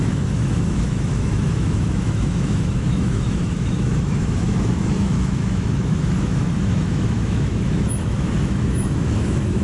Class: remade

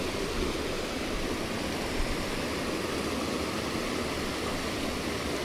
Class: recorded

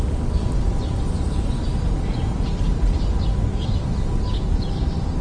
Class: recorded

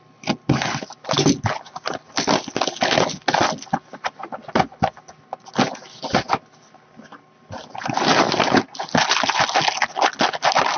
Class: recorded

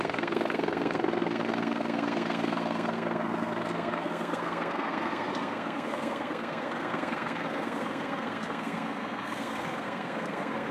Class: remade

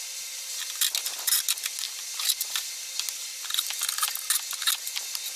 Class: recorded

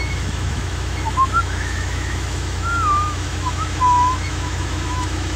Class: remade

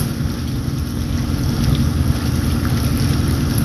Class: recorded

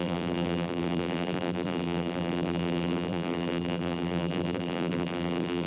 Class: remade